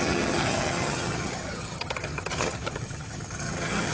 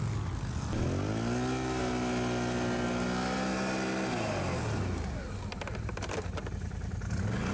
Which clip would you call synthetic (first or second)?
first